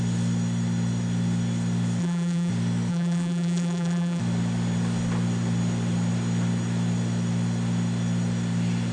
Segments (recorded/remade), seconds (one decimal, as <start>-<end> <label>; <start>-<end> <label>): 0.0-2.0 recorded; 2.0-2.5 remade; 2.5-2.9 recorded; 2.9-4.2 remade; 4.2-8.9 recorded